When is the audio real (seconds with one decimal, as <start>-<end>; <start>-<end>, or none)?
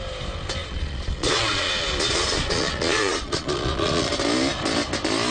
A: 0.0-0.6; 1.7-2.1; 4.1-5.3